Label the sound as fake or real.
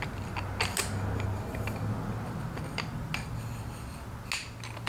real